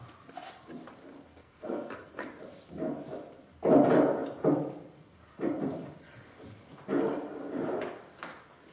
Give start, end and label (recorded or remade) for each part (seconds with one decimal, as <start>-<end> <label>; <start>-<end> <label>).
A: 0.0-1.4 recorded; 1.4-2.3 remade; 2.3-8.7 recorded